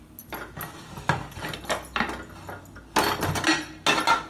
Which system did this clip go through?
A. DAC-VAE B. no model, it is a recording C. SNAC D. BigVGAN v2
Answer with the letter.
B